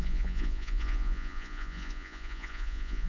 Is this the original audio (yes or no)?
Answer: no